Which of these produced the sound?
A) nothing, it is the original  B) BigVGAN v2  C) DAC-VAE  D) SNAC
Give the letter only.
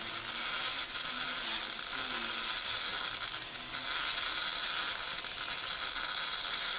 A